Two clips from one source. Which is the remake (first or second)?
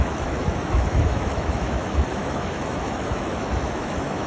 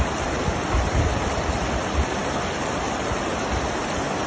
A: first